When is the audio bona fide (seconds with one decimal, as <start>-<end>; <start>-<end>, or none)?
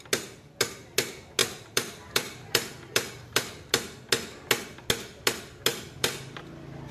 0.0-1.4; 3.7-5.7